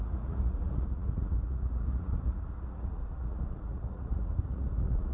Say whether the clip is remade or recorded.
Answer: remade